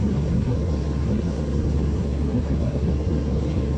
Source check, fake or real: fake